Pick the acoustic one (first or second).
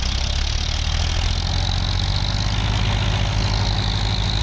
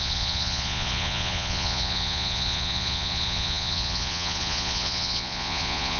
first